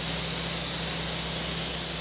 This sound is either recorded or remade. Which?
recorded